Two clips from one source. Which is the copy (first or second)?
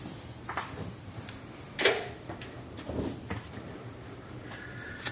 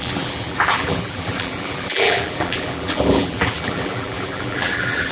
second